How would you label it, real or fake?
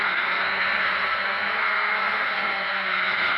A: fake